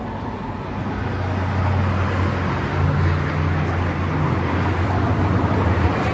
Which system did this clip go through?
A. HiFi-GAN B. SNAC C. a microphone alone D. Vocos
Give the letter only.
C